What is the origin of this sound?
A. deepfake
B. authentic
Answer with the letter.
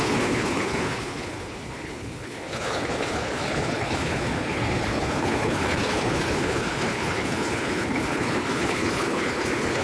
A